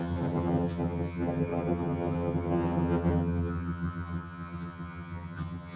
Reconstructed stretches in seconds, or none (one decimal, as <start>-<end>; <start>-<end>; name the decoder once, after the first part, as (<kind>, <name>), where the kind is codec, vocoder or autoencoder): 0.0-5.8 (vocoder, HiFi-GAN)